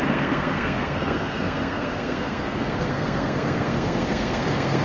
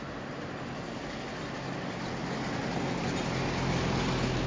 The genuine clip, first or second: second